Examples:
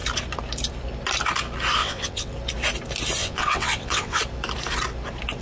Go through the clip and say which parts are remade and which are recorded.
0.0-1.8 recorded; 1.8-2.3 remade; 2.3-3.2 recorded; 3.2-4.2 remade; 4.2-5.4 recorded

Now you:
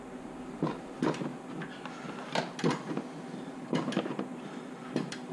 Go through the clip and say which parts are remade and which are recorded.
0.0-1.3 remade; 1.3-3.5 recorded; 3.5-5.3 remade

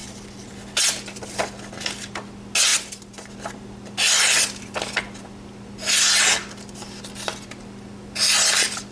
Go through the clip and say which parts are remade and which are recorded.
0.0-0.5 remade; 0.5-8.9 recorded

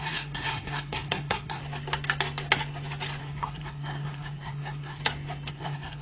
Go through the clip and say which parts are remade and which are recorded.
0.0-1.6 remade; 1.6-3.2 recorded; 3.2-5.0 remade; 5.0-5.5 recorded; 5.5-6.0 remade